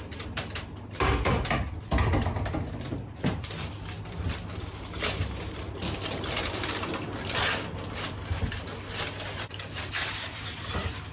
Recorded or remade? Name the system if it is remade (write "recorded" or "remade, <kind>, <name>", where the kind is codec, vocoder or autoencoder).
remade, vocoder, BigVGAN v2